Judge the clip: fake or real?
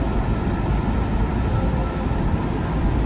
fake